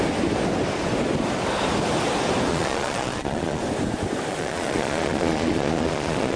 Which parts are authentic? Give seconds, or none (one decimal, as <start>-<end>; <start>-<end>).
0.0-2.5; 3.6-4.3